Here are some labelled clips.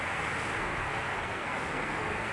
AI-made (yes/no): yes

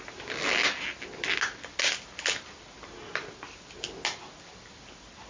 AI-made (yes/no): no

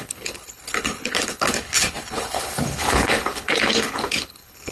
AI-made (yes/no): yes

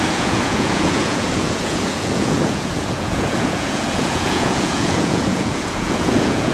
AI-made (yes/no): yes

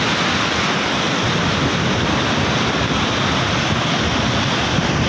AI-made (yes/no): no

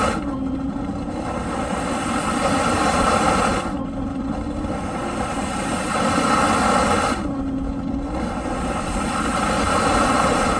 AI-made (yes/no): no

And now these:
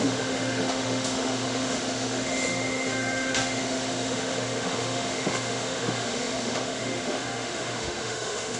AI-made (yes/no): yes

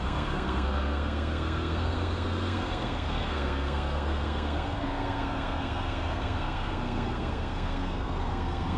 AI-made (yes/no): yes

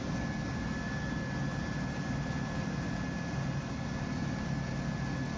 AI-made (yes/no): no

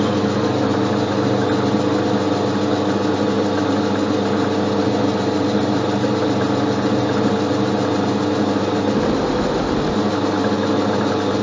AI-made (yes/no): no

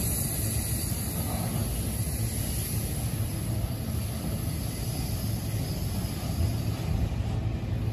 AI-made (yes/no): no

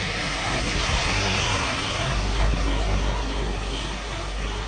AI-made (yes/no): yes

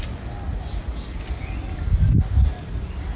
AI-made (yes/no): no